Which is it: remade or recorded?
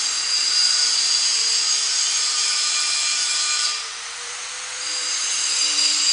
remade